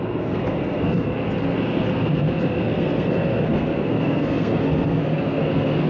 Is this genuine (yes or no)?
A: no